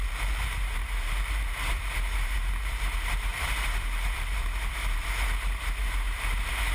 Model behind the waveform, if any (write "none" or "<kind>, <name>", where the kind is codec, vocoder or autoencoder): vocoder, BigVGAN v2